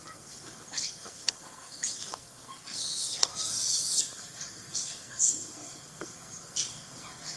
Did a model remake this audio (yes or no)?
yes